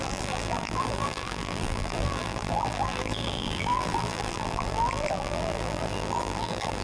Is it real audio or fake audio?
fake